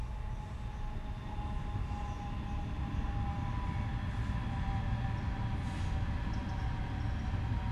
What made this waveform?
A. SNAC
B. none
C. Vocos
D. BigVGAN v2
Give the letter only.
B